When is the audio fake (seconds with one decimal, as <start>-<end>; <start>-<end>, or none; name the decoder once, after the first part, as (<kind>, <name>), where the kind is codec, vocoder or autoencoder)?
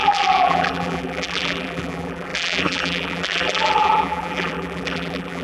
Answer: 0.0-5.4 (vocoder, BigVGAN v2)